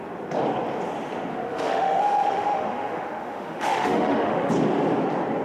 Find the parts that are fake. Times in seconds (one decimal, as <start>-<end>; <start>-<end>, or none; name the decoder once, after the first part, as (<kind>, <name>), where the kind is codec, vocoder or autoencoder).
1.3-4.5 (autoencoder, DAC-VAE)